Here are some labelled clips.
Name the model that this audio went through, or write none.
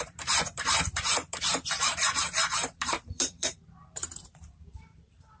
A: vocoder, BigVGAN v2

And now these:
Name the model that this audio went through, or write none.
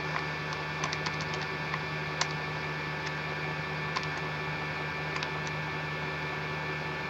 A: none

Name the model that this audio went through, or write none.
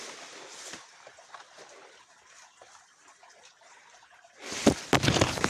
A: vocoder, BigVGAN v2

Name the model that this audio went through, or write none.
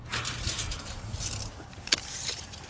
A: vocoder, BigVGAN v2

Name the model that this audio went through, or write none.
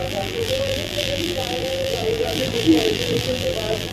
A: vocoder, BigVGAN v2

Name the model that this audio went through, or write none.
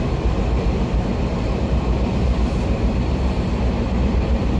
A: vocoder, BigVGAN v2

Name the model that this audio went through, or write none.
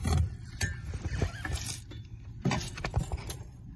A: vocoder, BigVGAN v2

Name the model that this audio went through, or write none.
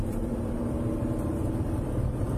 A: vocoder, BigVGAN v2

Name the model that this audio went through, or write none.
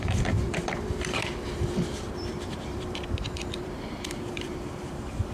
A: vocoder, BigVGAN v2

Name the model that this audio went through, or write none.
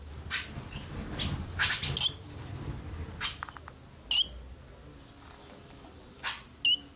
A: none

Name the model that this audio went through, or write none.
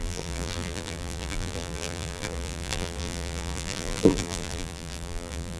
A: vocoder, BigVGAN v2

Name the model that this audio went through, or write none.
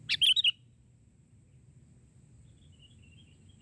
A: none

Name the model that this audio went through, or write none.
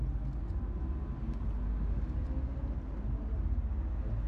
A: none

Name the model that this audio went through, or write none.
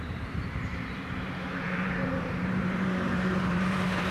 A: vocoder, BigVGAN v2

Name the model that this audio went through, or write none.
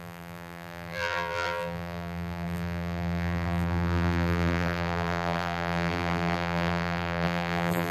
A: vocoder, BigVGAN v2